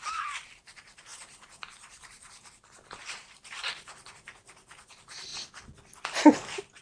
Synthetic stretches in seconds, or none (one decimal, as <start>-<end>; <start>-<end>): 0.0-5.3